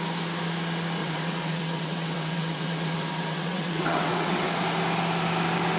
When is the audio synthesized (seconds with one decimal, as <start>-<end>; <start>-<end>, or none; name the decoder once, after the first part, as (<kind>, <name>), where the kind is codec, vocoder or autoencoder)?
1.0-4.5 (vocoder, WaveNeXt)